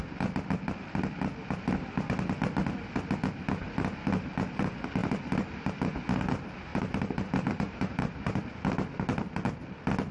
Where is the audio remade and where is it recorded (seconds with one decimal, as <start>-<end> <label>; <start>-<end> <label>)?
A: 0.0-5.0 recorded; 5.0-6.0 remade; 6.0-6.7 recorded; 6.7-8.4 remade; 8.4-10.1 recorded